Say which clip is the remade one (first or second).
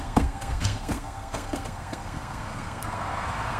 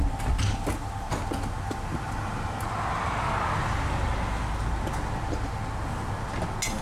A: first